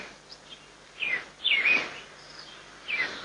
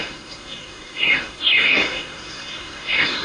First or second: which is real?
first